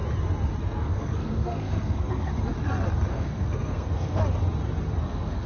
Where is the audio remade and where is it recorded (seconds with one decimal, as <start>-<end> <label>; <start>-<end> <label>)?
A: 0.0-0.6 recorded; 0.6-2.3 remade; 2.3-3.1 recorded; 3.1-4.2 remade; 4.2-5.0 recorded; 5.0-5.5 remade